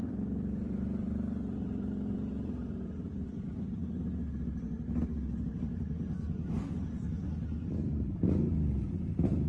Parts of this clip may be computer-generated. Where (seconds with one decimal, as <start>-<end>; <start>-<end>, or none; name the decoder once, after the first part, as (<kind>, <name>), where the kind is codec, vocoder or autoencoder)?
0.0-4.0 (vocoder, BigVGAN v2)

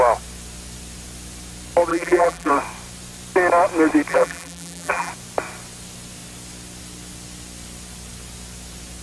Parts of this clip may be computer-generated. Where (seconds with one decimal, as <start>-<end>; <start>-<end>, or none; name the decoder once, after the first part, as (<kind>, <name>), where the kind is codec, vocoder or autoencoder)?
1.9-2.5 (vocoder, BigVGAN v2); 4.1-5.1

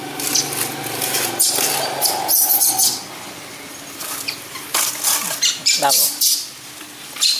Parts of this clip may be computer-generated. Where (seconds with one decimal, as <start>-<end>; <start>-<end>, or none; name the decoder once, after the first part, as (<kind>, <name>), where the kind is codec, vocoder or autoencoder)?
none

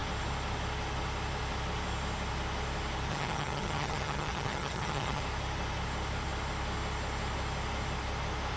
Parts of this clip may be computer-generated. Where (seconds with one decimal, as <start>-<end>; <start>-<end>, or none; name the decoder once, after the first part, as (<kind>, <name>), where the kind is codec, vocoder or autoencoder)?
3.1-5.2 (vocoder, HiFi-GAN)

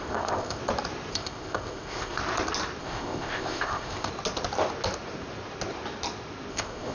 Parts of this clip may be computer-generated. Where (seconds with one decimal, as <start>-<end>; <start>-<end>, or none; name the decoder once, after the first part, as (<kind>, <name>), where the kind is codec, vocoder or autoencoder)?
0.0-0.6 (codec, ZipCodec); 1.1-2.2; 2.8-4.1; 6.5-6.9